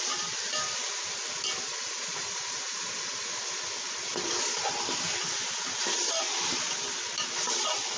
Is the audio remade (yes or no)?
no